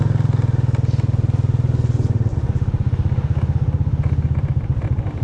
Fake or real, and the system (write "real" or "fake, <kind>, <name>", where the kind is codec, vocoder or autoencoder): real